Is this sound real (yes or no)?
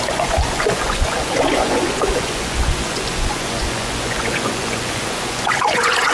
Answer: no